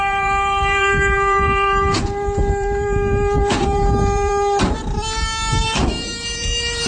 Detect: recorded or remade remade